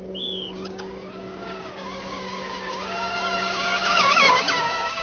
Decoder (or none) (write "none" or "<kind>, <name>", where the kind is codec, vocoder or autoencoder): codec, DAC